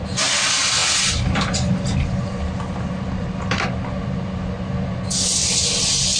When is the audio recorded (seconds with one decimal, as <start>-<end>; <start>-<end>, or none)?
0.0-6.2